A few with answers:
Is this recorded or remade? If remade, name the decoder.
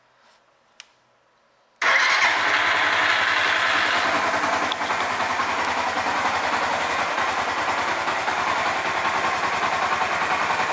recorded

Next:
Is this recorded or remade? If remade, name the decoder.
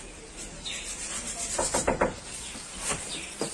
recorded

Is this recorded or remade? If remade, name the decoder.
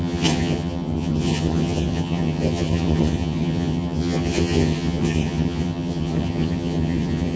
remade, vocoder, HiFi-GAN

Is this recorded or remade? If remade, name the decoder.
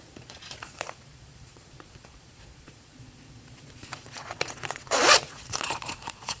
remade, vocoder, Vocos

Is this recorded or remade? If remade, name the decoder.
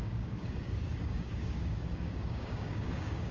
remade, codec, DAC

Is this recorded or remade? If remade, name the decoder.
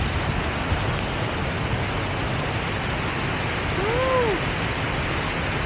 recorded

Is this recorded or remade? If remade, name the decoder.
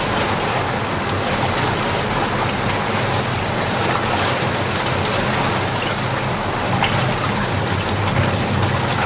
recorded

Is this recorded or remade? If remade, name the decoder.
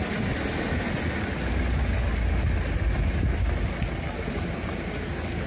recorded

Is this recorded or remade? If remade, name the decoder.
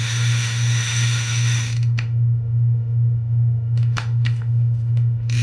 remade, autoencoder, DAC-VAE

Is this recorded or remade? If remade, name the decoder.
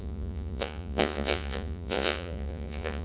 remade, vocoder, Vocos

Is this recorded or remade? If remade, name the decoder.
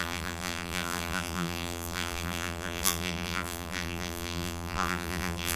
remade, vocoder, BigVGAN v2